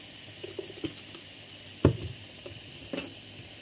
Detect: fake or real real